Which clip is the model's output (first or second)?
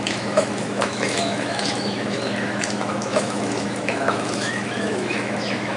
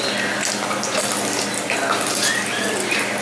first